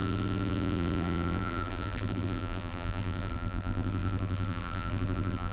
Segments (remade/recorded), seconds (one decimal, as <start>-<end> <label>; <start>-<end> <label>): 0.0-5.5 remade